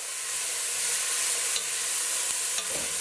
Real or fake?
real